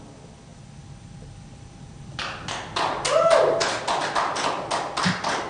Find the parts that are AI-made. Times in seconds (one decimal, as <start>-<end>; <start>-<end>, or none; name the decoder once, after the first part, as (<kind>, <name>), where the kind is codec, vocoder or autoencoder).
none